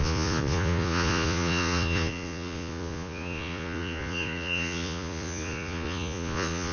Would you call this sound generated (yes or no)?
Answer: yes